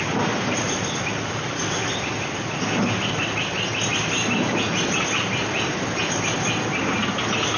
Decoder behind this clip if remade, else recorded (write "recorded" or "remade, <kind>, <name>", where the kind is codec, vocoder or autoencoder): recorded